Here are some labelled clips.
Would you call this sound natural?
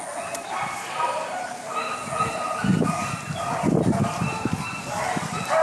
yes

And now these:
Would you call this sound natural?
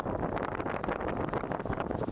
yes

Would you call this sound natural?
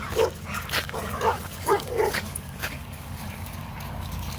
no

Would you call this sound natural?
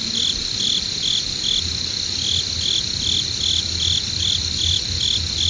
yes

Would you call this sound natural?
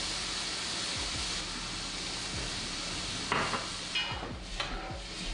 yes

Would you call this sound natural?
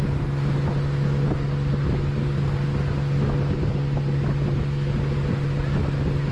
yes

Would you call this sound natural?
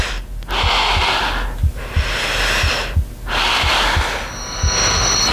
yes